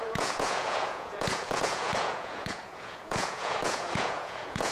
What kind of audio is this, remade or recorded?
remade